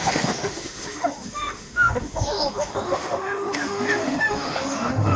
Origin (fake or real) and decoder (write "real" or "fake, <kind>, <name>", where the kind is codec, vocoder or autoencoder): fake, autoencoder, DAC-VAE